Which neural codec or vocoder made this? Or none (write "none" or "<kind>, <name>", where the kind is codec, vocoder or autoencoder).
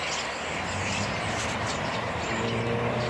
none